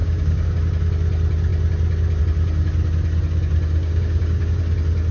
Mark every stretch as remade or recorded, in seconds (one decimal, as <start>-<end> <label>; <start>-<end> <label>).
0.0-0.6 remade; 0.6-3.8 recorded; 3.8-4.6 remade; 4.6-5.1 recorded